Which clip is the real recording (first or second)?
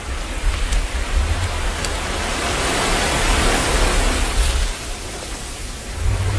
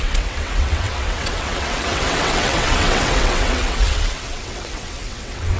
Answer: first